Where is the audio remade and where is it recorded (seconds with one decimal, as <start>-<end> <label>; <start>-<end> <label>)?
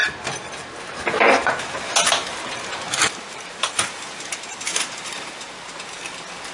0.0-2.2 recorded; 2.2-5.7 remade; 5.7-6.5 recorded